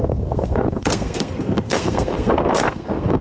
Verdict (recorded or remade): remade